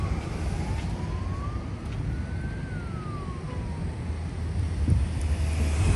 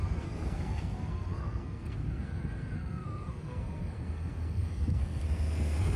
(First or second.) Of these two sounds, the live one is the first